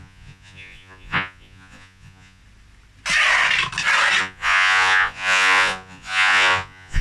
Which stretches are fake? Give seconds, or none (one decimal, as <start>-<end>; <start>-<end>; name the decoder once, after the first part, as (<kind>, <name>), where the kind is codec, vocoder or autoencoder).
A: 0.0-2.4 (vocoder, Vocos); 4.2-7.0